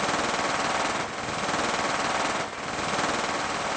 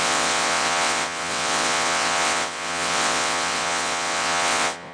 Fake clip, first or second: second